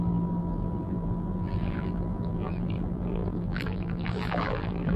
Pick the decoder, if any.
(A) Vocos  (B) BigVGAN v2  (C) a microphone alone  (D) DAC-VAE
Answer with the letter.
B